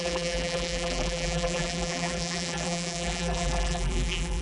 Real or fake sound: fake